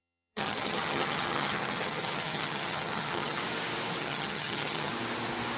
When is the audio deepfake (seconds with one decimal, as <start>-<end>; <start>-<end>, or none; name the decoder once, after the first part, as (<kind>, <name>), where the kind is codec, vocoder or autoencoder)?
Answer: 0.0-3.4 (vocoder, HiFi-GAN); 4.0-4.9

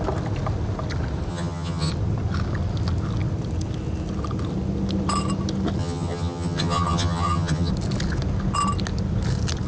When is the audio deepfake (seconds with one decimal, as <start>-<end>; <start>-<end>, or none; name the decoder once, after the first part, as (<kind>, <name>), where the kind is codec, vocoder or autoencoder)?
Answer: 1.3-1.9 (vocoder, HiFi-GAN); 5.8-7.7

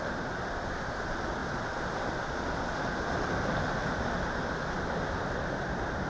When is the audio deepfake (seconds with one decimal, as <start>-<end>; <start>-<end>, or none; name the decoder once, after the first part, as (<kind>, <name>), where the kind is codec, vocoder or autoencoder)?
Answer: none

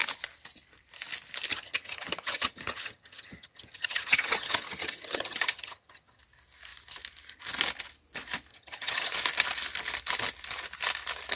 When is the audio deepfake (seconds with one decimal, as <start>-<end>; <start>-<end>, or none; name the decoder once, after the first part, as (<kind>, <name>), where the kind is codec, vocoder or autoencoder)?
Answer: 1.5-6.2 (vocoder, HiFi-GAN); 8.5-9.1

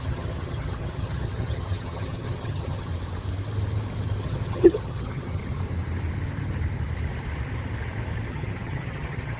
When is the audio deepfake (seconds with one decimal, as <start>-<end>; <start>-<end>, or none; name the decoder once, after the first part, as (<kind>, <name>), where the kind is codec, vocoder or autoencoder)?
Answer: 0.0-2.9 (vocoder, HiFi-GAN); 4.2-5.4; 8.3-9.4

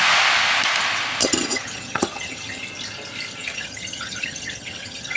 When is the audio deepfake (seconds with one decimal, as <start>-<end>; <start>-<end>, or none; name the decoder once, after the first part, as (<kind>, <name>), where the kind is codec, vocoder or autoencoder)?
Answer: 1.2-2.6 (vocoder, HiFi-GAN); 3.3-5.2

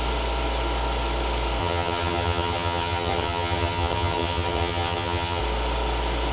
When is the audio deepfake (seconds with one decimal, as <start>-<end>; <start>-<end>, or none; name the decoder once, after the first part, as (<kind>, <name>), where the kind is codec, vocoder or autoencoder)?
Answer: 1.6-5.4 (vocoder, HiFi-GAN)

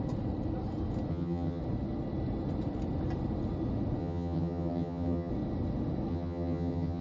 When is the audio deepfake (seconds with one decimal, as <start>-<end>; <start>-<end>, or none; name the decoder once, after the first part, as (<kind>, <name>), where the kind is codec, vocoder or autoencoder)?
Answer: 1.1-1.6 (vocoder, HiFi-GAN); 4.0-5.3; 6.1-7.0